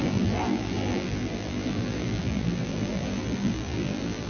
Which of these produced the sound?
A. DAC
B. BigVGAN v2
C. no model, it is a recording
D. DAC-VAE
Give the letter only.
B